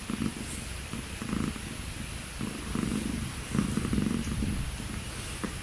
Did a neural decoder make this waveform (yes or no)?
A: no